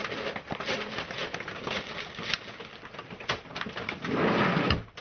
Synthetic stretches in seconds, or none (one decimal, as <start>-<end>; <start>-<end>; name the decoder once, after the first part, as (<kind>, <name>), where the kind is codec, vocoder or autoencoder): none